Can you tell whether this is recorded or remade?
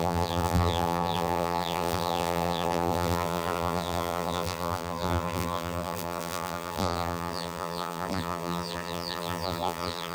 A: remade